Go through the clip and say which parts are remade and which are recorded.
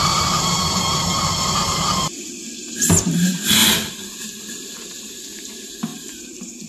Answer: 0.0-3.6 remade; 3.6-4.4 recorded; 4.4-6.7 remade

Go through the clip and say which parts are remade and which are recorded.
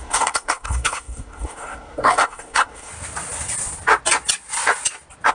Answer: 0.0-2.9 remade; 2.9-5.3 recorded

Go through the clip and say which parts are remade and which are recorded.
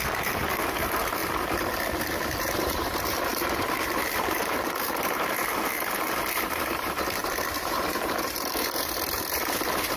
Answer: 0.0-1.2 remade; 1.2-2.4 recorded; 2.4-10.0 remade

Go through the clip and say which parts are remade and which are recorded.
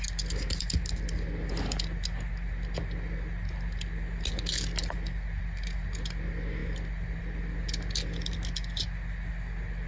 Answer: 0.0-9.9 recorded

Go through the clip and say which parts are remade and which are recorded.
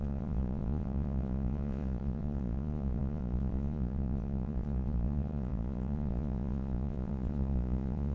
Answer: 0.0-8.1 remade